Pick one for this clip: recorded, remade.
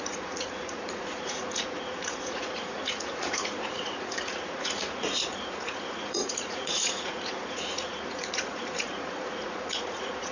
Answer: remade